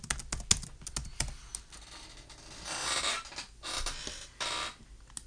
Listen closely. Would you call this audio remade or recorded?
recorded